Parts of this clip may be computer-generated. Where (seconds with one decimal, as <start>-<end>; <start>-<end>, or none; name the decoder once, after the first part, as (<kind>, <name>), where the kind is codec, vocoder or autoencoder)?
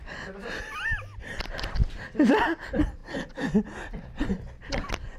none